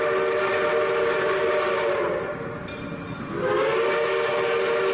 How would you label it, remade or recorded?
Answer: recorded